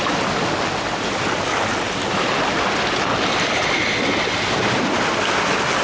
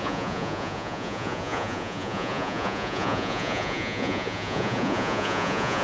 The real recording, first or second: first